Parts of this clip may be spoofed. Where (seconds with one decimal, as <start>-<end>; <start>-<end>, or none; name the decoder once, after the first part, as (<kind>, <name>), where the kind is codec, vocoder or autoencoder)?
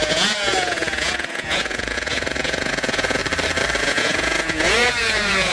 0.0-3.2 (vocoder, Vocos); 3.8-5.5